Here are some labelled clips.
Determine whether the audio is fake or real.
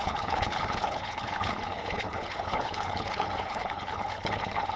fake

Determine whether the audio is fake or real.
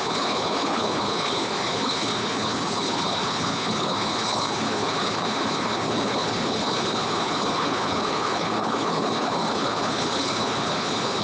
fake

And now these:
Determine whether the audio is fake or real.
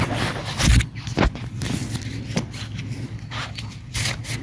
real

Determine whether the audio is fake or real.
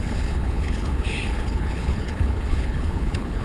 fake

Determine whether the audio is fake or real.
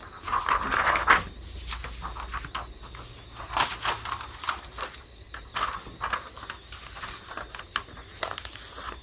real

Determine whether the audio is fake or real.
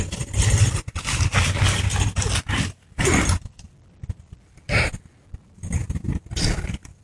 real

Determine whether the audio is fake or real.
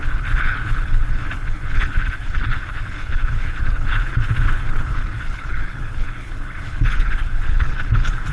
fake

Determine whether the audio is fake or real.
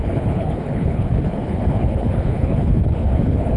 fake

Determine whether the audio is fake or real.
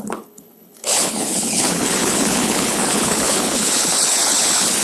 fake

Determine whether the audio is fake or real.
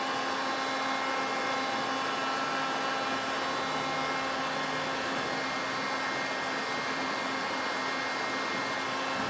real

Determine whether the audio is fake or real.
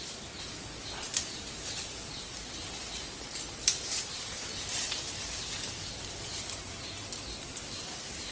real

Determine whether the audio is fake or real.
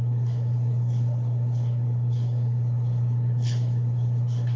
fake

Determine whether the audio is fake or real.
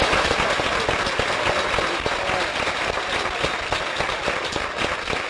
real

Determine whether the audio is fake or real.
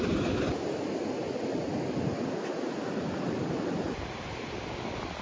real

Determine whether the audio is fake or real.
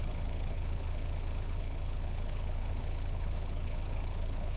fake